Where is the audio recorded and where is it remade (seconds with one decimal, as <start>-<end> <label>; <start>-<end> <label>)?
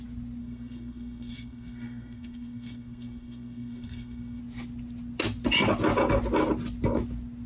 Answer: 0.0-0.4 recorded; 0.4-4.4 remade; 4.4-7.5 recorded